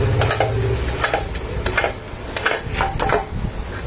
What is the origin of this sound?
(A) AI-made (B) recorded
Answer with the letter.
B